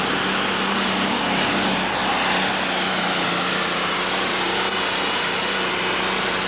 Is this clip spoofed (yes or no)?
no